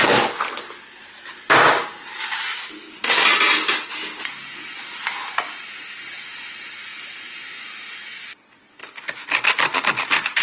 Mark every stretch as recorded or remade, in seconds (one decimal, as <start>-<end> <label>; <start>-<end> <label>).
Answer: 0.0-10.4 recorded